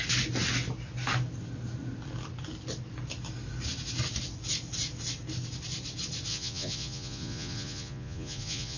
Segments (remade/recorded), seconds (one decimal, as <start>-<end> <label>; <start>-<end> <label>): 0.0-6.3 recorded; 6.3-8.8 remade